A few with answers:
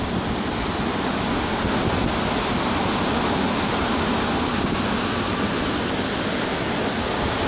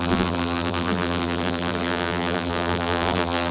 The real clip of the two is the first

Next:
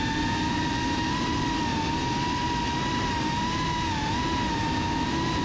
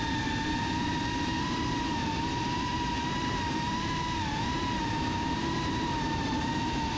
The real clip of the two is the first